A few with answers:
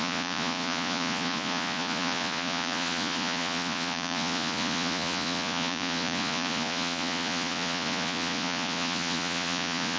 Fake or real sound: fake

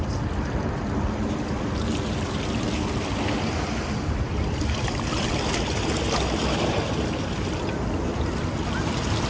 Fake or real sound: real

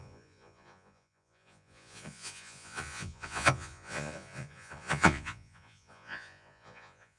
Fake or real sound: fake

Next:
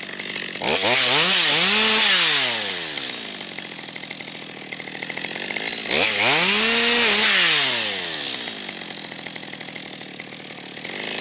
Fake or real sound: real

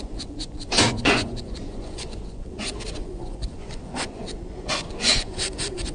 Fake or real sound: fake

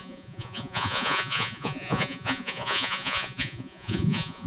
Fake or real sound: fake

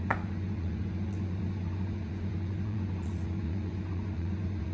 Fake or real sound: fake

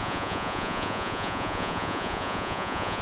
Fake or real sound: fake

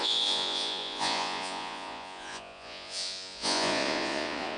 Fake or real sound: fake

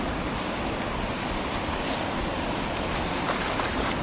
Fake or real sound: real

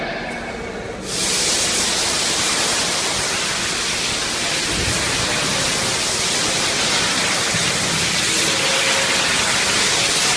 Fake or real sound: real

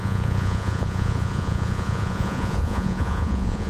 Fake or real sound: fake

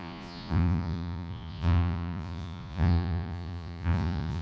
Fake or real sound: fake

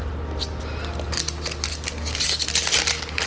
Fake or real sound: real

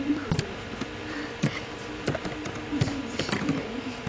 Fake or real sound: real